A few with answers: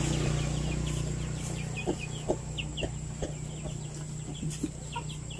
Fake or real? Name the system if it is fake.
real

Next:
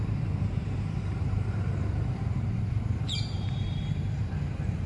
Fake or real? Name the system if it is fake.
fake, vocoder, BigVGAN v2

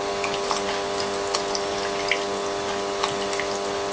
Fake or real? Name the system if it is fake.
real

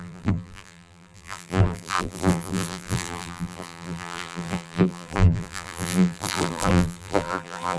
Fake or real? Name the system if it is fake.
fake, vocoder, BigVGAN v2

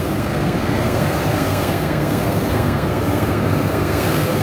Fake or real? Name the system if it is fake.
fake, codec, SNAC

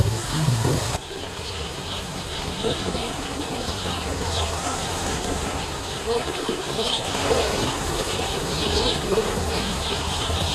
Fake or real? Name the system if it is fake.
fake, codec, SNAC